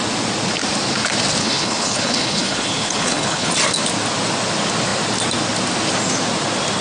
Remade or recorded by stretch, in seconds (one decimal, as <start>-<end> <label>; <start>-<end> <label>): 0.0-1.4 recorded; 1.4-3.5 remade; 3.5-6.8 recorded